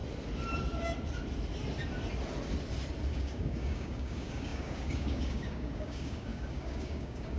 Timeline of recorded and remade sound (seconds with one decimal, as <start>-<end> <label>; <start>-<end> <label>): 0.0-3.1 recorded; 3.1-7.4 remade